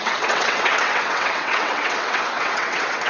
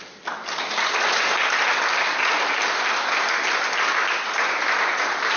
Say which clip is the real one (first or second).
second